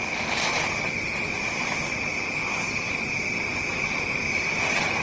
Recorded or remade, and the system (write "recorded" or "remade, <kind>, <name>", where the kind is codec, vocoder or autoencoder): recorded